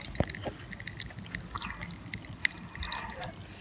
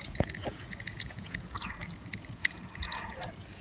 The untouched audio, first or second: first